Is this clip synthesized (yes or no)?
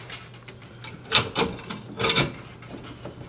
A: no